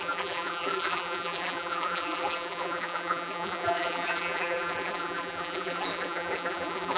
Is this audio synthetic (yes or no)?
yes